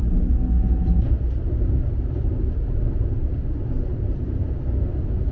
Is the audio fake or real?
real